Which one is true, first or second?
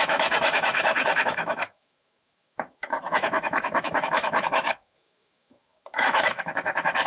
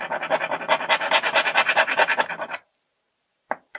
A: second